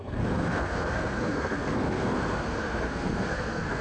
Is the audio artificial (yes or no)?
yes